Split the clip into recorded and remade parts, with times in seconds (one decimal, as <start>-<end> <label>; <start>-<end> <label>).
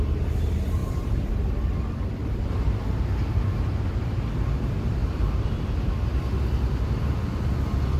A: 0.0-0.8 recorded; 0.8-1.3 remade; 1.3-2.2 recorded; 2.2-4.6 remade; 4.6-5.0 recorded; 5.0-5.9 remade; 5.9-8.0 recorded